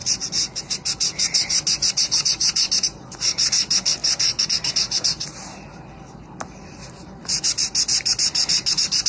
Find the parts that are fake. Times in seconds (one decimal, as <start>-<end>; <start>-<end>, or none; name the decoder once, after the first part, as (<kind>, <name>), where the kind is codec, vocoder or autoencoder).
none